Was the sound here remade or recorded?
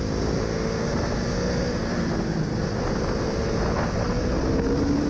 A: recorded